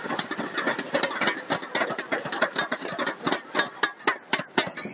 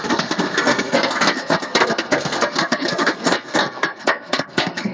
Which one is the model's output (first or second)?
second